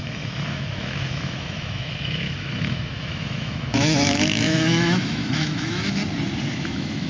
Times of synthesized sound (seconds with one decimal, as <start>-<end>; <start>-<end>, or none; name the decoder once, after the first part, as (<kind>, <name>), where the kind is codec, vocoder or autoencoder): 0.0-6.0 (autoencoder, DAC-VAE); 6.5-7.1